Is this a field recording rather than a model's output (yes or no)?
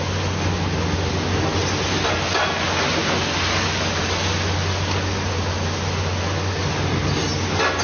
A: yes